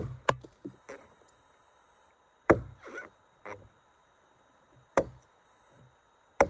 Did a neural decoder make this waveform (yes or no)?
no